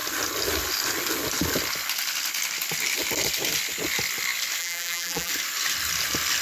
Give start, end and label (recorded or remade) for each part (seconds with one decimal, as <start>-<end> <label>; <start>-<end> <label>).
0.0-4.6 recorded; 4.6-5.3 remade; 5.3-6.4 recorded